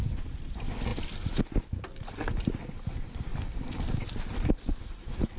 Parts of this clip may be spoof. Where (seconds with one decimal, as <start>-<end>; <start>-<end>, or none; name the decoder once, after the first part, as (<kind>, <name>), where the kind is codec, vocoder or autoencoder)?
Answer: 3.3-5.0 (vocoder, BigVGAN v2)